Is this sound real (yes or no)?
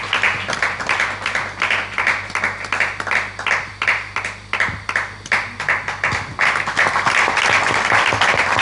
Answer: yes